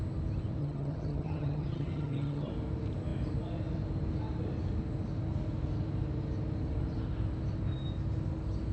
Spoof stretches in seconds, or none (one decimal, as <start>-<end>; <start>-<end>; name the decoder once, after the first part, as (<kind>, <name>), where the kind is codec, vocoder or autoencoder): 0.6-2.5 (vocoder, HiFi-GAN)